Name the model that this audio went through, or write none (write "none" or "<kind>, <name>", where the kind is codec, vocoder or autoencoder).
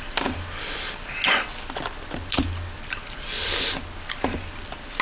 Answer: none